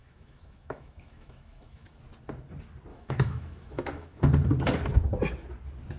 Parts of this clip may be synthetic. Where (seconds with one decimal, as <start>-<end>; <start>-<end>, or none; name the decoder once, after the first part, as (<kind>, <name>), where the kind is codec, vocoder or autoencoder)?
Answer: 0.0-2.0 (autoencoder, DAC-VAE); 2.9-4.2